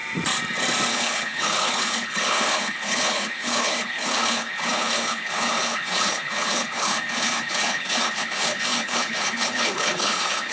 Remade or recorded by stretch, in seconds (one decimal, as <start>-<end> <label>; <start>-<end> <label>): 0.0-0.9 recorded; 0.9-10.5 remade